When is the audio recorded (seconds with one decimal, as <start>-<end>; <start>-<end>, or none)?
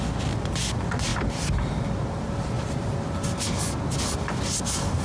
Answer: 0.0-5.0